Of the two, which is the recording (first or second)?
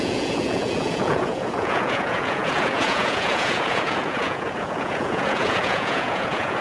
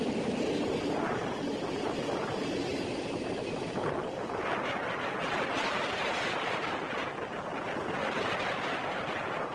second